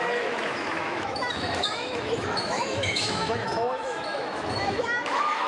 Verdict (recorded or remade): remade